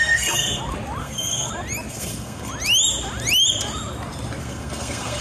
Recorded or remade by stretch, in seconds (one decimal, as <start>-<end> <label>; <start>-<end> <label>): 0.0-0.6 remade; 0.6-1.0 recorded; 1.0-1.5 remade; 1.5-1.9 recorded; 1.9-2.5 remade; 2.5-4.4 recorded; 4.4-5.2 remade